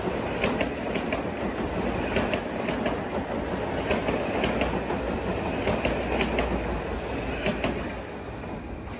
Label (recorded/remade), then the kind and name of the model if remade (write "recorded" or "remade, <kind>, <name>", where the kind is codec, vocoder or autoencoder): recorded